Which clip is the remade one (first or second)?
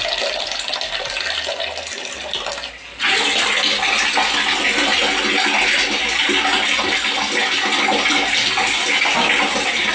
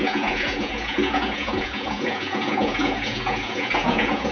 second